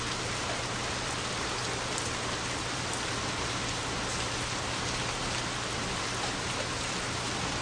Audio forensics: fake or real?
real